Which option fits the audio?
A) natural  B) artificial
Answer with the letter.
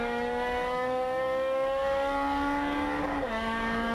B